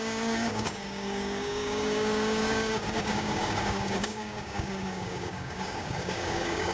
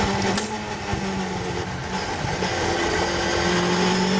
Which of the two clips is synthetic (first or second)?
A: first